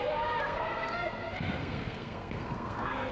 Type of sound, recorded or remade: remade